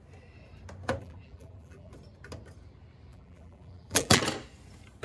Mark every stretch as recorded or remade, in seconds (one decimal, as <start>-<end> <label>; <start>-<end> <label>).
0.0-1.0 recorded; 1.0-1.9 remade; 1.9-3.1 recorded; 3.1-4.2 remade; 4.2-5.0 recorded